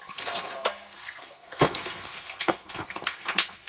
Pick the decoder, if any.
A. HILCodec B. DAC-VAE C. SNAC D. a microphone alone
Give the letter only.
C